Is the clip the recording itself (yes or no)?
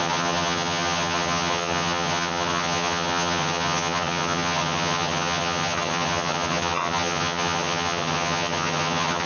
no